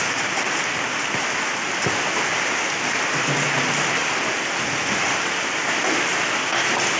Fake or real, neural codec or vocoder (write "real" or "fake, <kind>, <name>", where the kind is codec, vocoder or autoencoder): real